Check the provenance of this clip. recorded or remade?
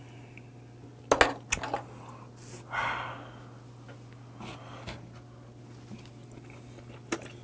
recorded